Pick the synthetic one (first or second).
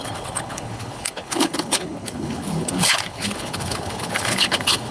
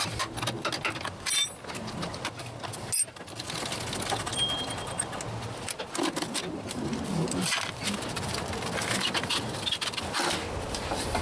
first